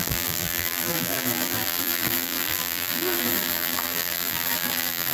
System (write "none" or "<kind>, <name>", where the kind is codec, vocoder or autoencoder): vocoder, BigVGAN v2